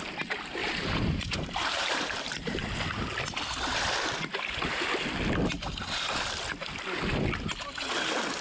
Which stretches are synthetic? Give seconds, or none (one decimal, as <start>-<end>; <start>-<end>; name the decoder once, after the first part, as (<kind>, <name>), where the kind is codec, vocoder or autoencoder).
0.6-2.7 (vocoder, BigVGAN v2)